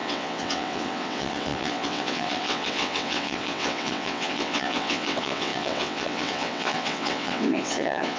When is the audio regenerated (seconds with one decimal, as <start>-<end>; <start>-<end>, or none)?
0.0-8.2